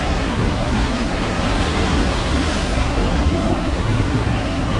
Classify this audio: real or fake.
fake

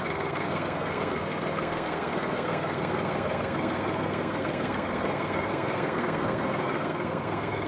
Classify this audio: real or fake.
fake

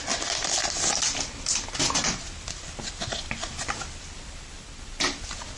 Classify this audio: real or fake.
real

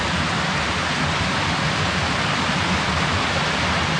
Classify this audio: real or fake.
real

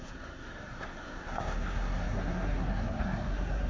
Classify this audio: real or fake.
fake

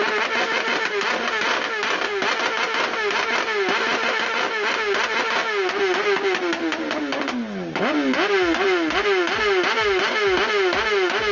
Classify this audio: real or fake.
real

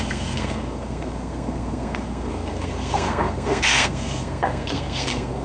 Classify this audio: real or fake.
fake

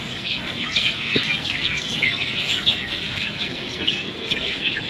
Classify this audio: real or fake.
fake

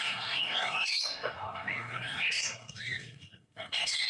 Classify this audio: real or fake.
fake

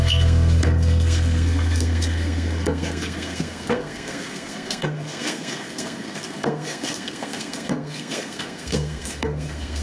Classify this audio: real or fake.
fake